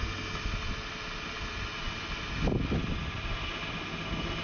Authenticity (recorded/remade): recorded